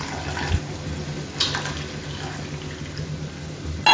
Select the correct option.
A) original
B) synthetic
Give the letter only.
A